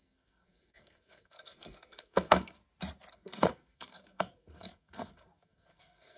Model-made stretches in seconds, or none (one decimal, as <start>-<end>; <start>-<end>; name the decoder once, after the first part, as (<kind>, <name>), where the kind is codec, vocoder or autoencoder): 0.0-2.6 (codec, SNAC); 3.1-6.2